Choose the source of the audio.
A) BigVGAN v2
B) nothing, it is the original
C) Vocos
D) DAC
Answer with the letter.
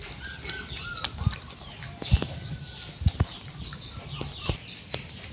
B